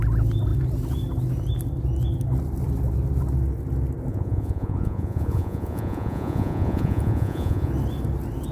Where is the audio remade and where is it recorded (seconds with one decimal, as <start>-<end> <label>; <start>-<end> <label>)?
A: 0.0-4.1 recorded; 4.1-7.7 remade; 7.7-8.5 recorded